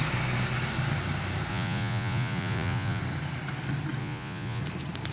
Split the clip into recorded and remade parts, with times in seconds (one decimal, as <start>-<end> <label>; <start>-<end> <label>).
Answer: 0.0-1.5 recorded; 1.5-3.0 remade; 3.0-4.0 recorded; 4.0-4.6 remade; 4.6-5.1 recorded